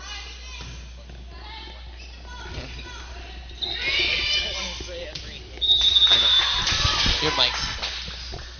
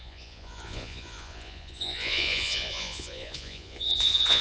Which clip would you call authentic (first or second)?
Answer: first